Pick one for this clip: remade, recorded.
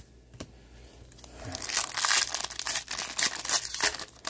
recorded